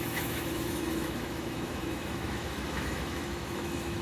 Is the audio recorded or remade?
remade